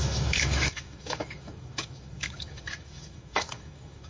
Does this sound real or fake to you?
fake